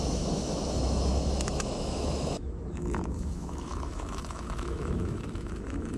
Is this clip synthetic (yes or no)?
yes